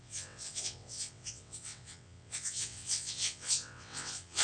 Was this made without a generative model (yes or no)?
no